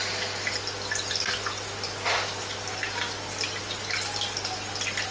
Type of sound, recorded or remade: recorded